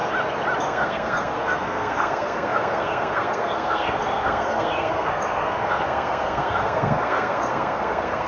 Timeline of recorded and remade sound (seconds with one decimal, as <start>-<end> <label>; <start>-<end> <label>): 0.0-0.6 recorded; 0.6-8.3 remade